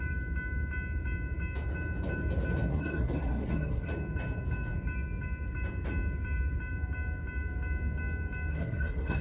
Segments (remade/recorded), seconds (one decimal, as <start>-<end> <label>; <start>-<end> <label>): 0.0-2.7 recorded; 2.7-3.9 remade; 3.9-8.5 recorded; 8.5-9.2 remade